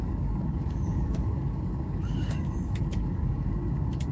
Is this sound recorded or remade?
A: remade